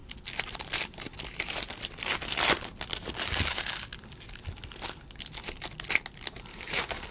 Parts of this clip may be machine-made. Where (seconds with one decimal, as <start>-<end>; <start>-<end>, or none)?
0.0-2.4